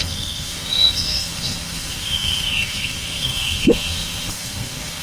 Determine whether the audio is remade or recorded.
remade